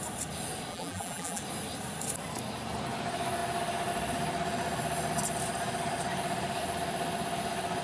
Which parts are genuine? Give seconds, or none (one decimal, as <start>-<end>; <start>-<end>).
0.0-0.7; 1.4-7.8